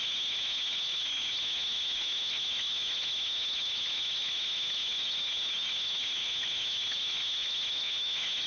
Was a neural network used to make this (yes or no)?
yes